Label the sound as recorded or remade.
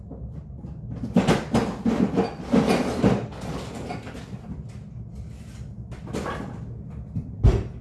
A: recorded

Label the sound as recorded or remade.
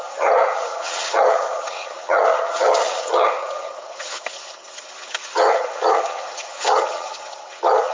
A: remade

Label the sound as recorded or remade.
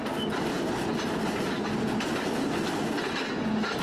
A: recorded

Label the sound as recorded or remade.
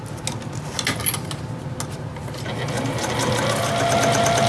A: recorded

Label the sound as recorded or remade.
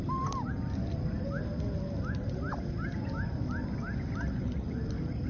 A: recorded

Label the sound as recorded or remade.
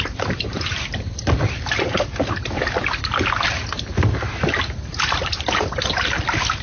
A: recorded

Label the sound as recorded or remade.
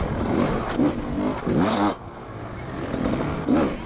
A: recorded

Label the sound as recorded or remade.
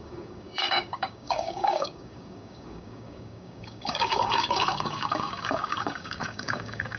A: remade